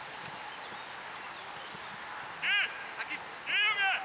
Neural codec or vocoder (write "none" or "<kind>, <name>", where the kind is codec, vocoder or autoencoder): none